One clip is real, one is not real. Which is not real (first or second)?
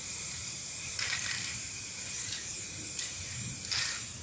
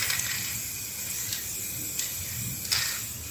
first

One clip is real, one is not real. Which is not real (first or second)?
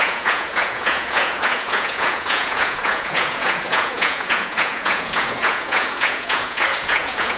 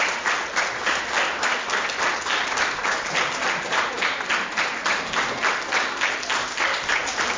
first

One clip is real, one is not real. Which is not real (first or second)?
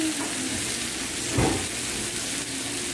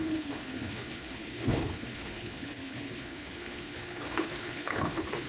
second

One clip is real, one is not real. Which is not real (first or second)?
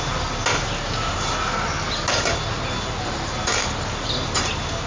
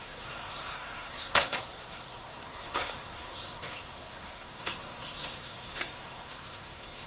second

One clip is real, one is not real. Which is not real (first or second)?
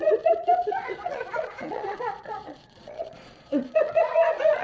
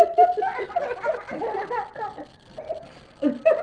first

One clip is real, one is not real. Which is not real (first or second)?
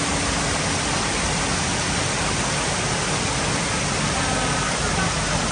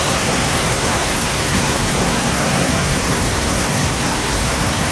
second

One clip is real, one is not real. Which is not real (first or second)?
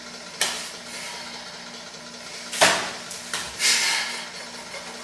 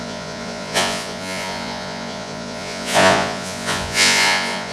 second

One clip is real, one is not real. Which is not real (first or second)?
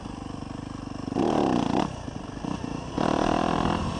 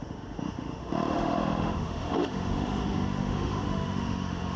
second